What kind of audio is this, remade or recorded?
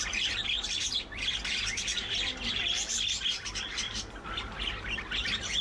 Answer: remade